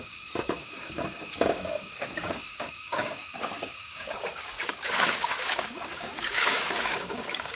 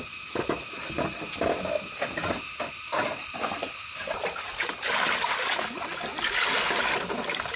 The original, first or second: second